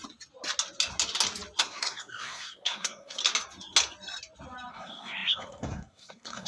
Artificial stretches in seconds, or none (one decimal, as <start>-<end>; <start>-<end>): 1.6-3.2; 4.7-6.5